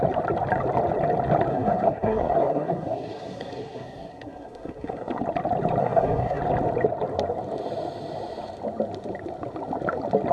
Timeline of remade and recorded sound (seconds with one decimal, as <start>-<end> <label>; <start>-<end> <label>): 0.0-1.5 recorded; 1.5-5.2 remade; 5.2-5.8 recorded; 5.8-6.4 remade; 6.4-10.3 recorded